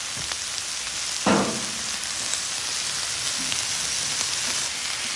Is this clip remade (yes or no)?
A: no